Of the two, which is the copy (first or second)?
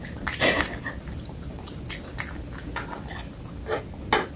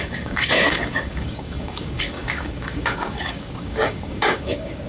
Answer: second